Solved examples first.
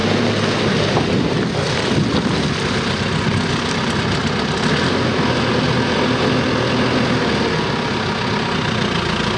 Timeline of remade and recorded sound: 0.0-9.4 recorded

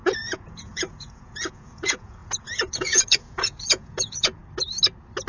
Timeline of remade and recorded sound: 0.0-4.4 remade; 4.4-5.3 recorded

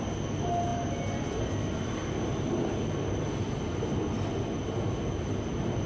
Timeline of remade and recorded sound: 0.0-5.9 recorded